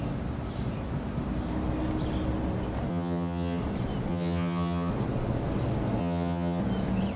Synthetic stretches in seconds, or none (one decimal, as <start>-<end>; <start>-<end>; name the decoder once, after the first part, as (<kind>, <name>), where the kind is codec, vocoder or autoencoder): 2.9-3.6 (vocoder, HiFi-GAN); 4.1-4.9; 6.0-6.6